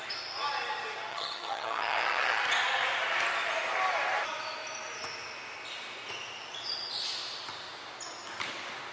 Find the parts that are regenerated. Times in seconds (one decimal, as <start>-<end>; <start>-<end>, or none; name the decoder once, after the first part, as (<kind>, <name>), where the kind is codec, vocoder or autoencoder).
1.1-2.4 (vocoder, HiFi-GAN)